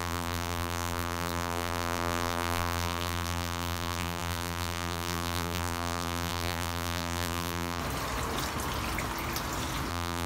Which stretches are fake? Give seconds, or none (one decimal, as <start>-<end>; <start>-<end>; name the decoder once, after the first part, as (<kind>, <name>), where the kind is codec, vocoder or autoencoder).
0.0-7.8 (vocoder, BigVGAN v2); 9.9-10.3